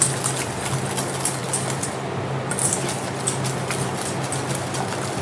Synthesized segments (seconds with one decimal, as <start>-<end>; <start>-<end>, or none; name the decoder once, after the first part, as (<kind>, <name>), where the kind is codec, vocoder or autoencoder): none